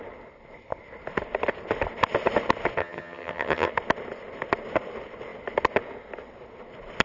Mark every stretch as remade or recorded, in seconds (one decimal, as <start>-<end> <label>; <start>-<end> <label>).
0.0-2.8 recorded; 2.8-3.7 remade; 3.7-7.0 recorded

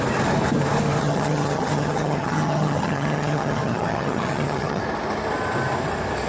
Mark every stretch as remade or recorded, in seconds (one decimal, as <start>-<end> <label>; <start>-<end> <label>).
0.0-1.0 recorded; 1.0-4.8 remade; 4.8-6.3 recorded

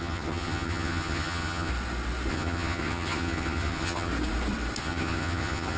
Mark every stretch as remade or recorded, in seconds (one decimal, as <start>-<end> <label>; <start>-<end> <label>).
0.0-1.7 remade; 1.7-2.3 recorded; 2.3-4.1 remade; 4.1-4.8 recorded; 4.8-5.8 remade

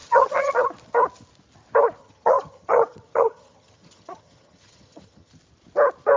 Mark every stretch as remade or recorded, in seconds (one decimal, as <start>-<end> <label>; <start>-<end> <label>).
0.0-0.5 remade; 0.5-2.0 recorded; 2.0-5.3 remade; 5.3-6.2 recorded

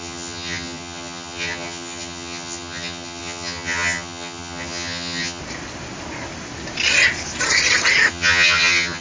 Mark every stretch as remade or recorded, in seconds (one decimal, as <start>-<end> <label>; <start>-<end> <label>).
0.0-5.4 remade; 5.4-8.1 recorded; 8.1-9.0 remade

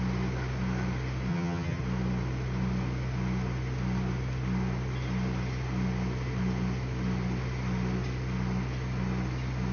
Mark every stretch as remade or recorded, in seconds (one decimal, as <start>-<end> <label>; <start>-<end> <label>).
0.0-1.3 recorded; 1.3-1.8 remade; 1.8-9.7 recorded

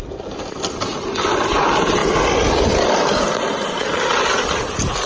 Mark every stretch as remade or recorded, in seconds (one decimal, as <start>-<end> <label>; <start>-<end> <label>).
0.0-5.1 recorded

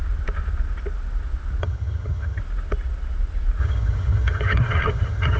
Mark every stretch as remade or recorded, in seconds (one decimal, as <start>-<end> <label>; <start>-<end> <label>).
0.0-1.6 recorded; 1.6-2.4 remade; 2.4-3.6 recorded; 3.6-5.4 remade